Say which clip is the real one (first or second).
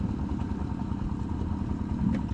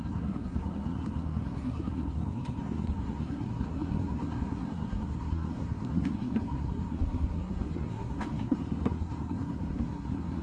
first